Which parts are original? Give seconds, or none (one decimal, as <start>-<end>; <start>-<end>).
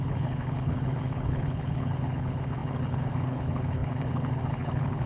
none